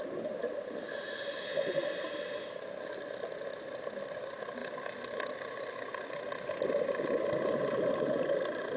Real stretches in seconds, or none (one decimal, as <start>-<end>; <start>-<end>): 0.0-8.8